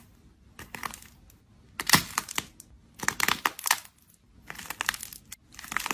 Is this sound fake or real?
real